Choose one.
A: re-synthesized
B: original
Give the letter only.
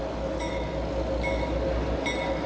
B